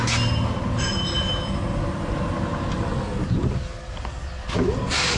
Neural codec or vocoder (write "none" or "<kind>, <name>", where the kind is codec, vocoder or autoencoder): none